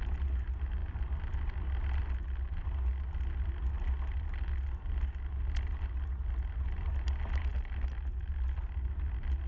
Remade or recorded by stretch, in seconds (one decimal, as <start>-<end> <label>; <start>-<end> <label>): 0.0-9.5 recorded